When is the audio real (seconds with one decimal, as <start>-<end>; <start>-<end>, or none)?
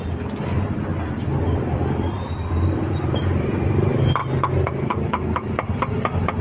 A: 4.2-6.4